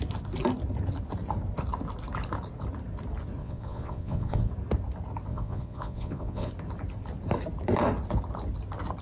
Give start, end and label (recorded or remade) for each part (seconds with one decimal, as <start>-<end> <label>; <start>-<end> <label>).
0.0-3.4 recorded; 3.4-4.5 remade; 4.5-5.3 recorded; 5.3-6.5 remade; 6.5-9.0 recorded